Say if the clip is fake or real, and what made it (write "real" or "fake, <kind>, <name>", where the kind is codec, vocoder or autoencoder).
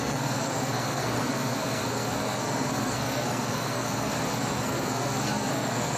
fake, codec, SNAC